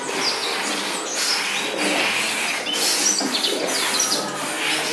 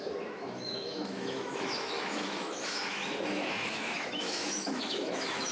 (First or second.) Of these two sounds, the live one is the first